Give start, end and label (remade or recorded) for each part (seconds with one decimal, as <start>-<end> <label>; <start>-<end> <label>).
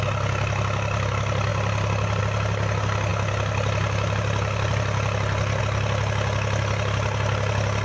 0.0-7.8 recorded